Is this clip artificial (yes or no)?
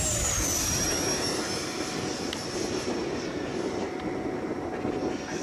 no